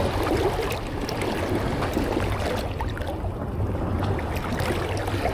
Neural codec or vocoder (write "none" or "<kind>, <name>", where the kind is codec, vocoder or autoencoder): none